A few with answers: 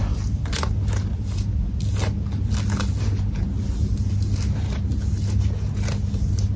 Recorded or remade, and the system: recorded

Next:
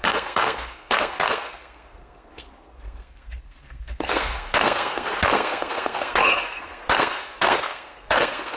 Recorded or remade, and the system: remade, codec, SNAC